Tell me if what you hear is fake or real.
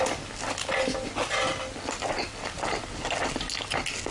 real